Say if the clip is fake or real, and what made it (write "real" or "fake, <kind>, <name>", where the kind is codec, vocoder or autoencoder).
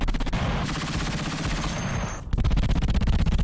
real